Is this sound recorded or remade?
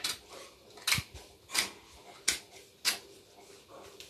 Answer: recorded